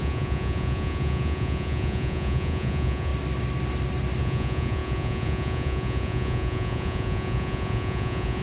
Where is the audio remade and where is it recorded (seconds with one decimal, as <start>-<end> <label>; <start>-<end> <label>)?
0.0-3.1 remade; 3.1-4.2 recorded; 4.2-8.4 remade